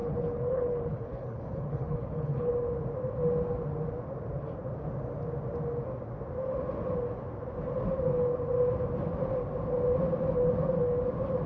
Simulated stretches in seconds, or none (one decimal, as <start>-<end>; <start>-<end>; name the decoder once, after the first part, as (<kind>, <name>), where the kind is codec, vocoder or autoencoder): 0.0-2.5 (codec, HILCodec)

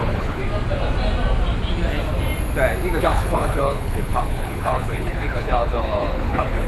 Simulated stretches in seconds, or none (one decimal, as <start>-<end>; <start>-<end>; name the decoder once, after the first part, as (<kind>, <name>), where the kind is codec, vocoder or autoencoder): 0.0-0.4 (codec, HILCodec); 3.0-6.7